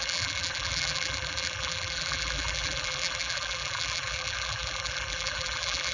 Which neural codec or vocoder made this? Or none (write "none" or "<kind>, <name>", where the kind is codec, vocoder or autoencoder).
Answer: vocoder, BigVGAN v2